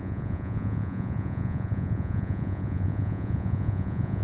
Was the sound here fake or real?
fake